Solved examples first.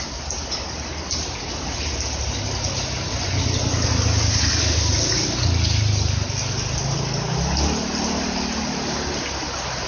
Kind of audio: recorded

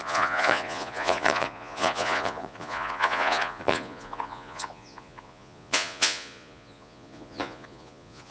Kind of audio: remade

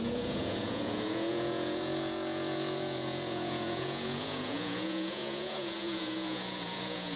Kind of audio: remade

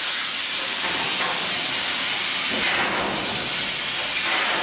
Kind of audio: recorded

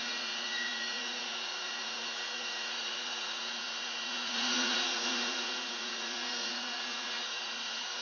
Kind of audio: remade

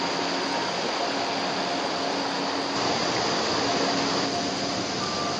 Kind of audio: recorded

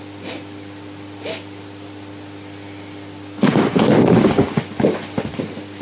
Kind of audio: recorded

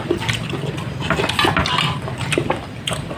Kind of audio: recorded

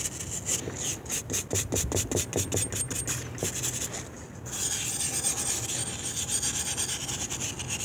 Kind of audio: recorded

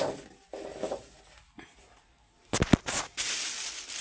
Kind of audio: recorded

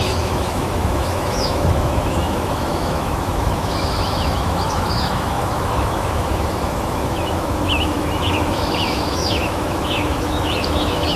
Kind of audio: remade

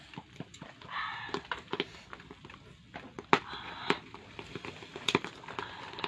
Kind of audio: recorded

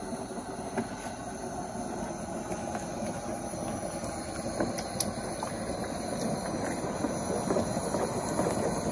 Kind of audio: recorded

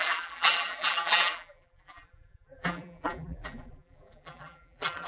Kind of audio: remade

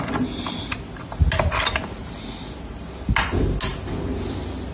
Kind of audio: recorded